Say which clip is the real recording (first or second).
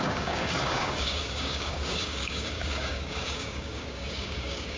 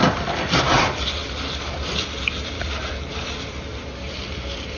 second